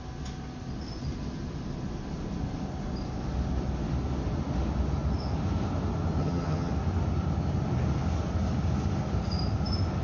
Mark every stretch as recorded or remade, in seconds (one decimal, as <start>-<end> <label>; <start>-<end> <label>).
0.0-6.2 recorded; 6.2-6.7 remade; 6.7-10.0 recorded